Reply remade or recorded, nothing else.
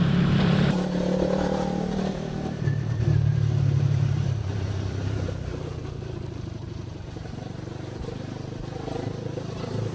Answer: remade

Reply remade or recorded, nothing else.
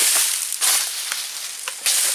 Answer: recorded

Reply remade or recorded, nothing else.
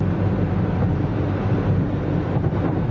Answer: remade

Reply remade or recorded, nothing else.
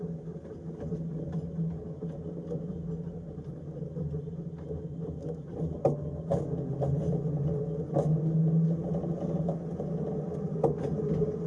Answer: recorded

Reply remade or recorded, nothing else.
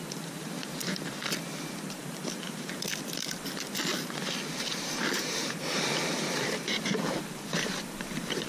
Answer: remade